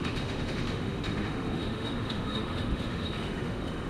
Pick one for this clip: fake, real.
fake